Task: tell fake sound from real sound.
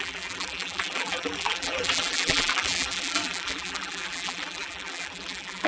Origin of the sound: fake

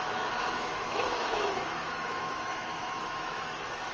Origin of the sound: fake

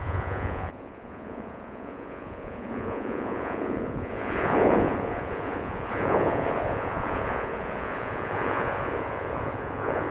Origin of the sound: fake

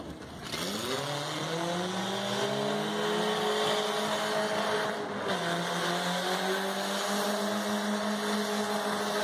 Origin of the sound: real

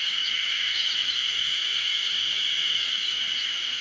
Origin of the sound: fake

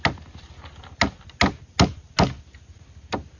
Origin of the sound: real